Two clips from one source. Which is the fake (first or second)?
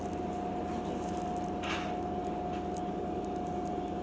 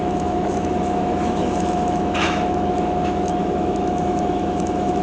second